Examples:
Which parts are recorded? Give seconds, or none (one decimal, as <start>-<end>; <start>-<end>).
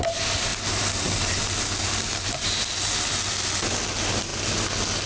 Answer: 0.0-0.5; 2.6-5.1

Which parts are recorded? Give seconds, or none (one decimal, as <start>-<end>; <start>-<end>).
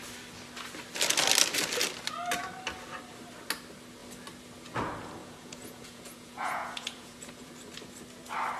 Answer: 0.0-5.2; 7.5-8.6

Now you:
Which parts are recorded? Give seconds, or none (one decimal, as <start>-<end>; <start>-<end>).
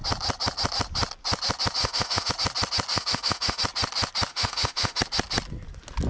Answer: 0.0-1.8; 2.3-2.9; 3.6-4.3; 5.0-6.1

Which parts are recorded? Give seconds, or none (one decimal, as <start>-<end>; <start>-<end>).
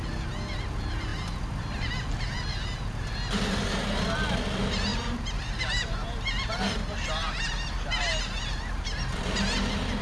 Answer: 0.0-4.9; 7.8-10.0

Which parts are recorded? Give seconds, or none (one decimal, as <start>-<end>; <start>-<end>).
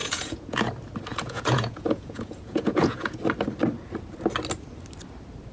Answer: 0.7-1.1; 3.2-5.5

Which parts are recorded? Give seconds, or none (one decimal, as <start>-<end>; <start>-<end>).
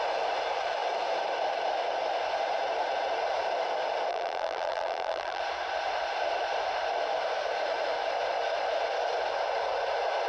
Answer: 0.0-4.1; 5.4-10.3